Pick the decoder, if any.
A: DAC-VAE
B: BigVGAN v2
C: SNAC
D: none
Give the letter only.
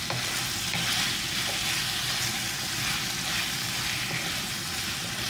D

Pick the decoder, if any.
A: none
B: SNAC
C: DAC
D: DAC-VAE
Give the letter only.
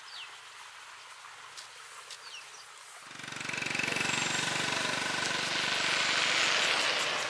A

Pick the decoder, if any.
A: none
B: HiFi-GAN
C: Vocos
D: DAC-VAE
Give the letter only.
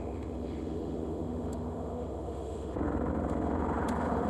D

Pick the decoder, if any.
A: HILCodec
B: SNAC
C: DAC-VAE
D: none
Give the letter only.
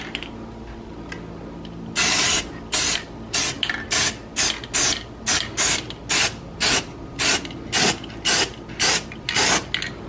D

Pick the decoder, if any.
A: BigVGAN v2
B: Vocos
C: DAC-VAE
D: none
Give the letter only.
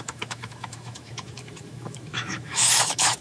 C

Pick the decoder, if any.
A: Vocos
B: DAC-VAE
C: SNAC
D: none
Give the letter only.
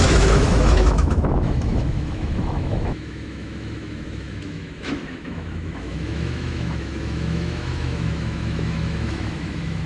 B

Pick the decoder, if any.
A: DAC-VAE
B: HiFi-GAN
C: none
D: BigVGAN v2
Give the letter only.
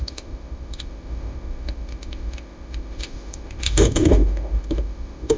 A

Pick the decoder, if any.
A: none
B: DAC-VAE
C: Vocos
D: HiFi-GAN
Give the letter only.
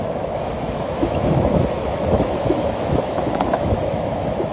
B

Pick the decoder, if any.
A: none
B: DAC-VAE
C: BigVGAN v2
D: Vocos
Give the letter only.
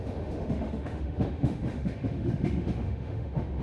B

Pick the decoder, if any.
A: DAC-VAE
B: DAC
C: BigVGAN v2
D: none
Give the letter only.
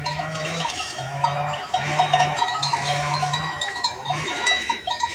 A